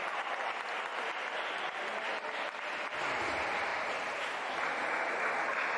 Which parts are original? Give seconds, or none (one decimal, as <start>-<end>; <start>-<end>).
0.0-3.7; 4.3-5.8